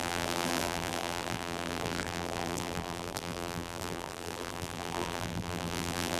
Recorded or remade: remade